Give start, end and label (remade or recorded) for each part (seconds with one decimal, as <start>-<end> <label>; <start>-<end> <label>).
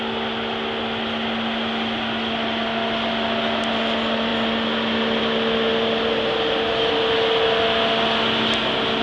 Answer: 0.0-9.0 recorded